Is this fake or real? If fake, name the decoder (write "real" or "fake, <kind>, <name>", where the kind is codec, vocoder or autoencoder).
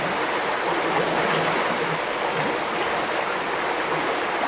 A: real